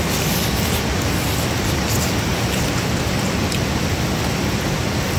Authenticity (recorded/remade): recorded